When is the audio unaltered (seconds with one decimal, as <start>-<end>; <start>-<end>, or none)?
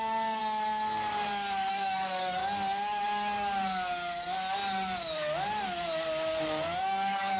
0.4-1.7; 2.4-6.8